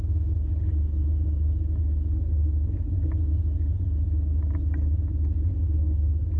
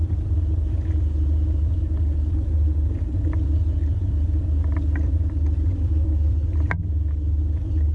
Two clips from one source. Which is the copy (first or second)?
second